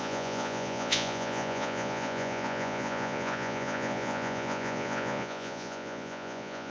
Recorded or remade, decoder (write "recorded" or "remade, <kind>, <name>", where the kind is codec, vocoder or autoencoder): remade, vocoder, Vocos